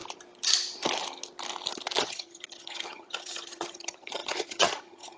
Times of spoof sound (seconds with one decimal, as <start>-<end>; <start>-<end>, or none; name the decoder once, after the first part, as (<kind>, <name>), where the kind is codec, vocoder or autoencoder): 2.0-5.2 (vocoder, HiFi-GAN)